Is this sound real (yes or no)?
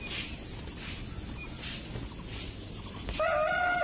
yes